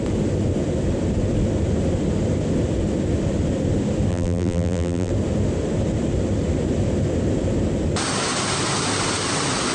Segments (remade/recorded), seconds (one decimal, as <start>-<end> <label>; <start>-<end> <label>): 0.0-4.1 recorded; 4.1-5.1 remade; 5.1-9.7 recorded